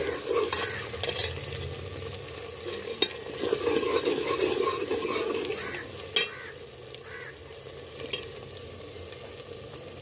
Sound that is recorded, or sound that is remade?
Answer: recorded